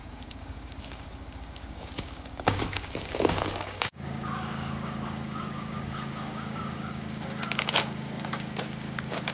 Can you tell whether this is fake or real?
fake